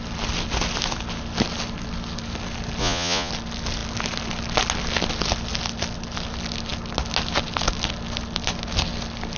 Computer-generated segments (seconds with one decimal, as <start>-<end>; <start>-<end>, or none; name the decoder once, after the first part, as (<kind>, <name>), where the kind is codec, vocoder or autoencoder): 2.8-3.3 (vocoder, Vocos)